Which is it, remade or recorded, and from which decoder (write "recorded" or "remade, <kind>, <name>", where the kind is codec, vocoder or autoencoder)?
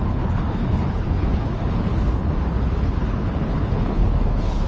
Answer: remade, codec, HILCodec